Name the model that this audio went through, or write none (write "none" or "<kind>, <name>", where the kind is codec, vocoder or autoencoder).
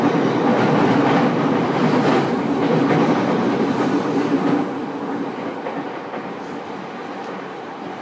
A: none